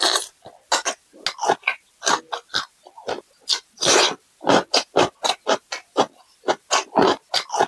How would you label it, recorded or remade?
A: recorded